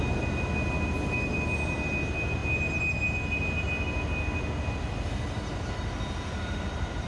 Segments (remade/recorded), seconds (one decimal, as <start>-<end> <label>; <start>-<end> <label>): 0.0-7.1 recorded